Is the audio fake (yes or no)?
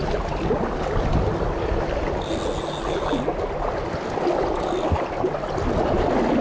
no